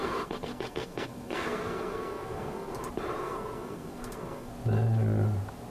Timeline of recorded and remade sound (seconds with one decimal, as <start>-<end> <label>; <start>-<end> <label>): 0.0-2.7 remade; 2.7-3.2 recorded; 3.2-4.5 remade; 4.5-5.7 recorded